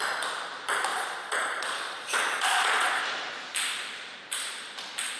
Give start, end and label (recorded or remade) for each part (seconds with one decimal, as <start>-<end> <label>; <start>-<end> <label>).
0.0-0.9 recorded; 0.9-3.0 remade; 3.0-5.2 recorded